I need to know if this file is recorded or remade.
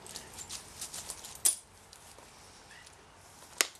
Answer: recorded